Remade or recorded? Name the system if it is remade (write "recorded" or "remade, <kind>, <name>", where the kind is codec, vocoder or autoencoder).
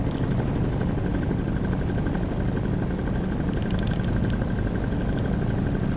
recorded